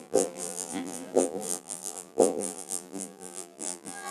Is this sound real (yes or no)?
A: no